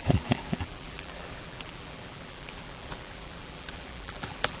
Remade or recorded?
remade